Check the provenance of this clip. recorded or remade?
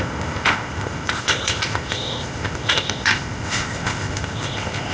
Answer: remade